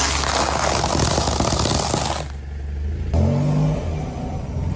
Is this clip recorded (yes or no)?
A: yes